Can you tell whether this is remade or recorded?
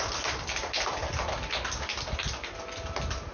recorded